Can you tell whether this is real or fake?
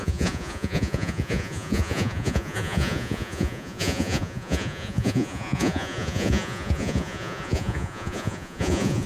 fake